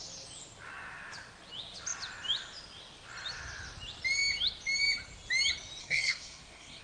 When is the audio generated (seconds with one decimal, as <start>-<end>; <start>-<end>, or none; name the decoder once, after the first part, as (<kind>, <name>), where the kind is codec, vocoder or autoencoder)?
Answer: 5.8-6.8 (codec, SNAC)